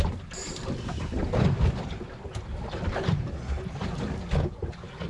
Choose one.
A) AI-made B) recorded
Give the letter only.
B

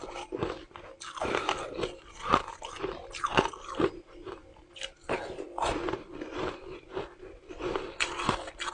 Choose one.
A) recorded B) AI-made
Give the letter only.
A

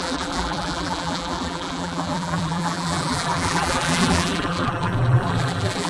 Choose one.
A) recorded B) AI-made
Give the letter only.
B